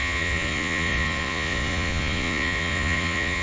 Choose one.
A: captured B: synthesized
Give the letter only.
B